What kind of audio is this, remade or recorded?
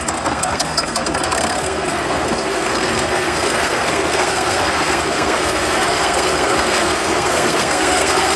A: remade